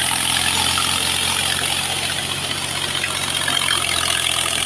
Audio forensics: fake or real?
real